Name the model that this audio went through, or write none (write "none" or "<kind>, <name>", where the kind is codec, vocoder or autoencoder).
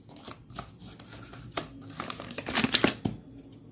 none